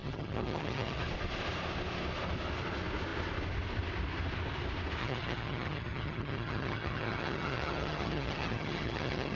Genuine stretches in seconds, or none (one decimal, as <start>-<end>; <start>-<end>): 1.0-5.0